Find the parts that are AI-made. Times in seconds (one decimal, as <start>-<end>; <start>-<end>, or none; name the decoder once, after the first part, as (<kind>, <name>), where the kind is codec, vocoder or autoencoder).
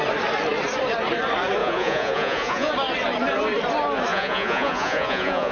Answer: 1.6-2.7 (vocoder, Vocos); 4.1-5.5